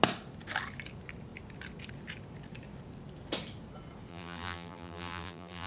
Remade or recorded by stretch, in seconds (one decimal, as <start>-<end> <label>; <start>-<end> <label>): 0.0-4.1 recorded; 4.1-5.7 remade